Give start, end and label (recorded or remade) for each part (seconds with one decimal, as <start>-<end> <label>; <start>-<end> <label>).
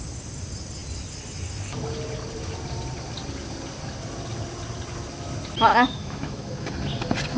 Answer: 0.0-5.7 recorded; 5.7-6.7 remade; 6.7-7.4 recorded